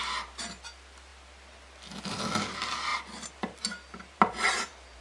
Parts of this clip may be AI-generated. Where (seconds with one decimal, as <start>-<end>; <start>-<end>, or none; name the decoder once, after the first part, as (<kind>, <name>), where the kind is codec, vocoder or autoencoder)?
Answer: none